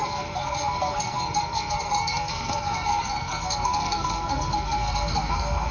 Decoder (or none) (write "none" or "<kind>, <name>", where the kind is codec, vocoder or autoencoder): codec, SNAC